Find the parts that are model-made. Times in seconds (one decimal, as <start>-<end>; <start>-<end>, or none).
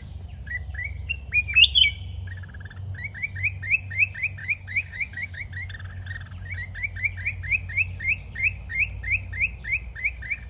4.4-5.4